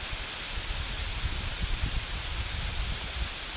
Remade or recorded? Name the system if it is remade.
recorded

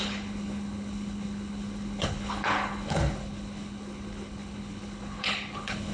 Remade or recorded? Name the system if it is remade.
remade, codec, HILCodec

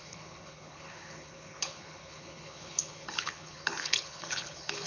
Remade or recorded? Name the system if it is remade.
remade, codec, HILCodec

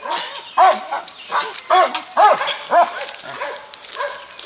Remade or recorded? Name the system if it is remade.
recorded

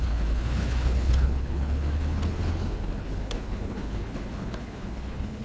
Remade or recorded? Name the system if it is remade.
remade, codec, HILCodec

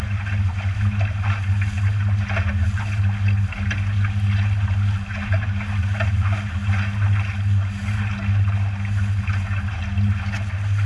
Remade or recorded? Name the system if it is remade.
recorded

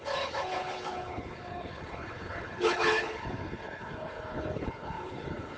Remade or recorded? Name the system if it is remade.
remade, codec, HILCodec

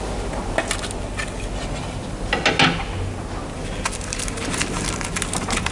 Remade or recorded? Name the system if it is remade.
recorded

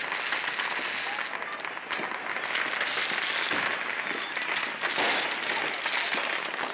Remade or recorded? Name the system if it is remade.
recorded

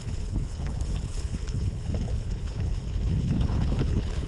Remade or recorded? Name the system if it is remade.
remade, codec, HILCodec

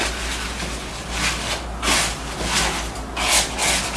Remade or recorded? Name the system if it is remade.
recorded